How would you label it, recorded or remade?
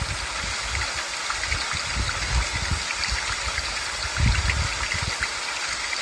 recorded